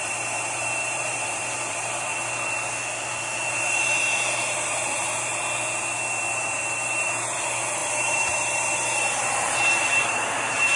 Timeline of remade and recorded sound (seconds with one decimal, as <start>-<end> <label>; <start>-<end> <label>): 0.0-2.1 remade; 2.1-3.5 recorded; 3.5-5.3 remade; 5.3-6.3 recorded; 6.3-10.8 remade